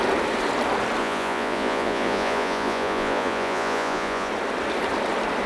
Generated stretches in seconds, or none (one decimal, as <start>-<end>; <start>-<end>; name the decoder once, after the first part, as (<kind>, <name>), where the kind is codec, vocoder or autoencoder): 1.0-4.3 (vocoder, Vocos)